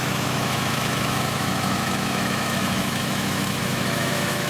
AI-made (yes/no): yes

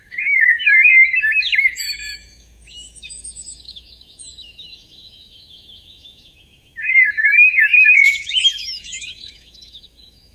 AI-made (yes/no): yes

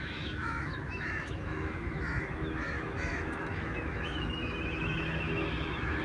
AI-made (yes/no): yes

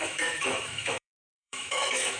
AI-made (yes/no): yes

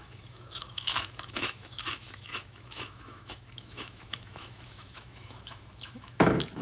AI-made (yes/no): yes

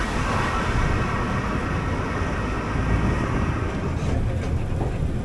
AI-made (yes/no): no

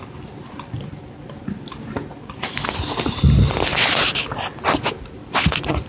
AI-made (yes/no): no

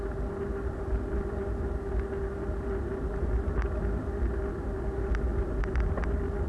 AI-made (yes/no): no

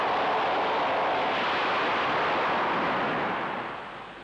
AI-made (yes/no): no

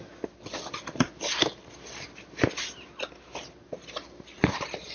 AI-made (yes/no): no